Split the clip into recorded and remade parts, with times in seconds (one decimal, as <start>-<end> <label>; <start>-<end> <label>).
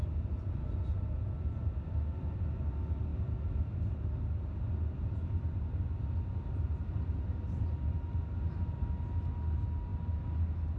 0.0-10.8 recorded